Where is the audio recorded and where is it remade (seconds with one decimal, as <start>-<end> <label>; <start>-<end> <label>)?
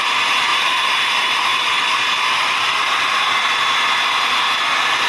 0.0-5.1 recorded